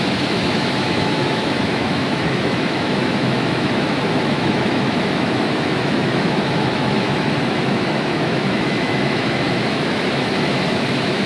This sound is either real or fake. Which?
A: fake